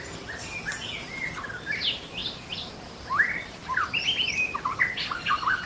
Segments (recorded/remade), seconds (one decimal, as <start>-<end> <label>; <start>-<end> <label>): 0.0-5.7 recorded